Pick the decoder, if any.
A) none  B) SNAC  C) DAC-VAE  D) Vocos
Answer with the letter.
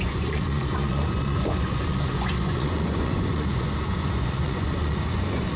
D